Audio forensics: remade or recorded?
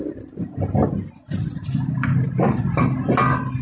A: recorded